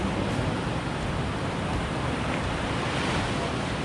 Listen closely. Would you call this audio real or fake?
real